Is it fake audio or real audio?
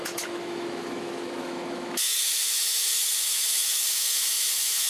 fake